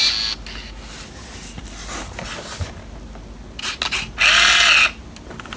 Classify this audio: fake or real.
real